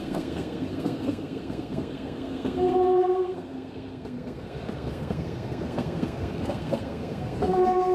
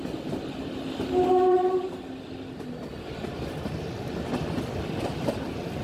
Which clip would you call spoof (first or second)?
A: first